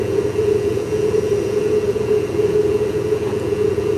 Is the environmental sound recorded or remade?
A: remade